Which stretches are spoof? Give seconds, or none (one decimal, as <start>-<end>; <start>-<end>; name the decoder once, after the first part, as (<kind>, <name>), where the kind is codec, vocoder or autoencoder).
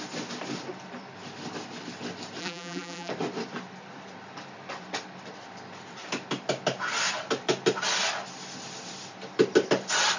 2.4-3.1 (vocoder, BigVGAN v2)